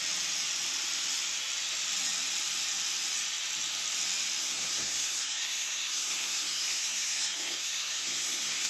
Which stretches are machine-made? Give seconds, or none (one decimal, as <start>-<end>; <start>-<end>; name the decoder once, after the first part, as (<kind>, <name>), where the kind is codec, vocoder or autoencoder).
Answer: 4.4-8.7 (codec, SNAC)